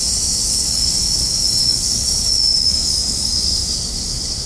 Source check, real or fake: fake